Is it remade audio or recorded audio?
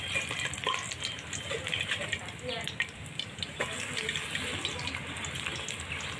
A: recorded